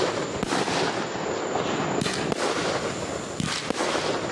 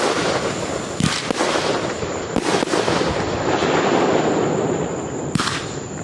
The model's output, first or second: second